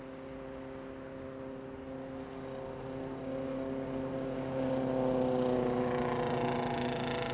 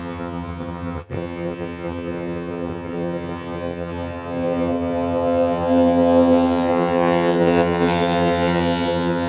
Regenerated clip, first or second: second